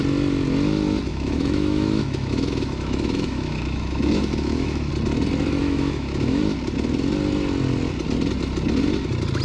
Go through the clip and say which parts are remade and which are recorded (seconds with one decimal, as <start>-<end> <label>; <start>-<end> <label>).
0.0-1.1 recorded; 1.1-4.9 remade; 4.9-5.6 recorded; 5.6-6.4 remade; 6.4-9.4 recorded